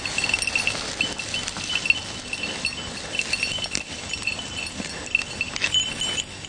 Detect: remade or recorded recorded